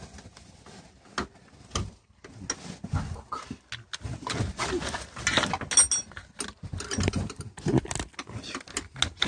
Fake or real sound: real